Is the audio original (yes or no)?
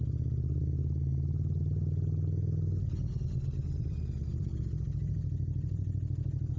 yes